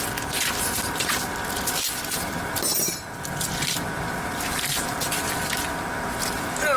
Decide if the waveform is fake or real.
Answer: real